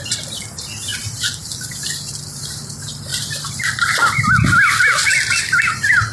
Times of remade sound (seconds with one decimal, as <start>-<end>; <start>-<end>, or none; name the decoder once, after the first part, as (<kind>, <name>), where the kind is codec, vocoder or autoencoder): 0.9-1.5 (vocoder, BigVGAN v2); 3.1-4.8